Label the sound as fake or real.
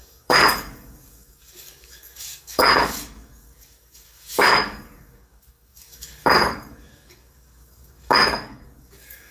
fake